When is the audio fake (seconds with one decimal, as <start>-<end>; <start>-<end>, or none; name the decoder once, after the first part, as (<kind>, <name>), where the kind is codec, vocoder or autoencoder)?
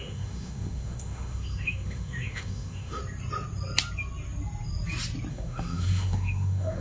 0.0-3.0 (autoencoder, DAC-VAE); 5.3-6.8